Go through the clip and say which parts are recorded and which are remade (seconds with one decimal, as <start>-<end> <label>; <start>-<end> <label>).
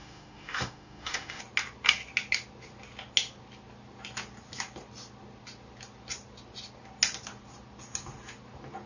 0.0-1.4 remade; 1.4-8.9 recorded